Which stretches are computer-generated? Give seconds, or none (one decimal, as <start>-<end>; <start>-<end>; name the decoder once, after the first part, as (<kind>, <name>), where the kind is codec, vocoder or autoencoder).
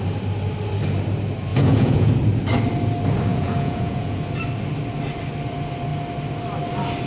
1.5-2.1 (vocoder, Vocos); 3.3-4.2